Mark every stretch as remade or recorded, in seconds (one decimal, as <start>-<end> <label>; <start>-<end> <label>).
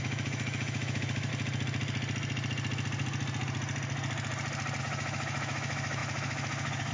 0.0-1.3 remade; 1.3-4.8 recorded; 4.8-6.9 remade